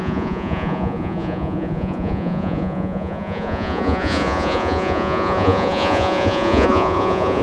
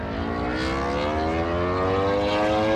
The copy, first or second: first